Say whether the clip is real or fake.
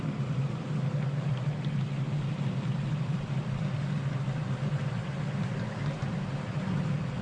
real